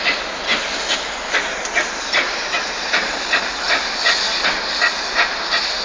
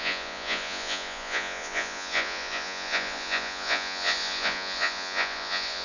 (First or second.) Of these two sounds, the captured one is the first